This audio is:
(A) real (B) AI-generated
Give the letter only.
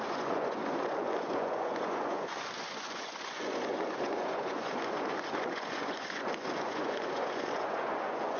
B